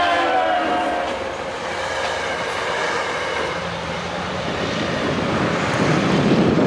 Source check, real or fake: fake